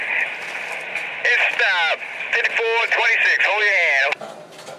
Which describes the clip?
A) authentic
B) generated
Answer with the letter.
A